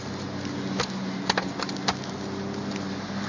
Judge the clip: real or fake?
real